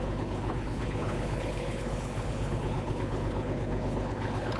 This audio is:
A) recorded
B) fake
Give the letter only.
B